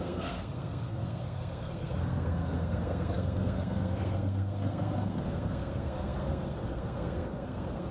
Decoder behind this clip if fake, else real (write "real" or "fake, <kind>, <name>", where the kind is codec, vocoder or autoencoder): fake, codec, SNAC